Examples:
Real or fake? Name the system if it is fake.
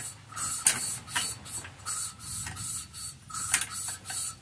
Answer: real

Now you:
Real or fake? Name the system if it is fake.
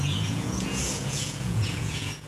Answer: fake, vocoder, Vocos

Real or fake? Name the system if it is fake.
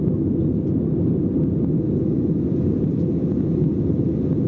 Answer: real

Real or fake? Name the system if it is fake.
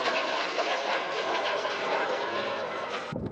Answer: fake, codec, SNAC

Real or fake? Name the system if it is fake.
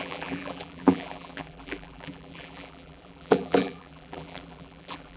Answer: fake, vocoder, BigVGAN v2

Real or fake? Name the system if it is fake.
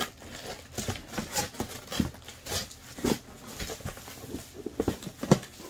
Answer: real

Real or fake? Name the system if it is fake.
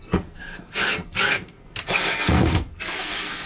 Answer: fake, codec, SNAC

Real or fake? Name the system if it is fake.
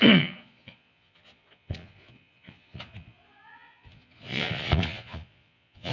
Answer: fake, vocoder, Vocos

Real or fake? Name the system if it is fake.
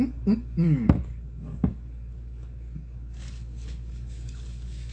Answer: fake, codec, DAC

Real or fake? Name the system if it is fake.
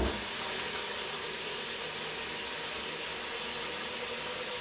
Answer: real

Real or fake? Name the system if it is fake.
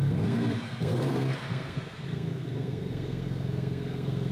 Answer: fake, codec, SNAC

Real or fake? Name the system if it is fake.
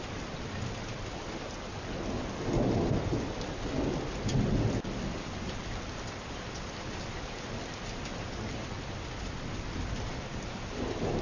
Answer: real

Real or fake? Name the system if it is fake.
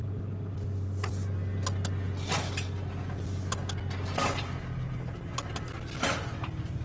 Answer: real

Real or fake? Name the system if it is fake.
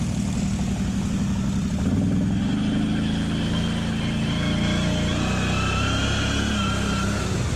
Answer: real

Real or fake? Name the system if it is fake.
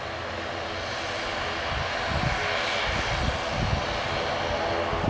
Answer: real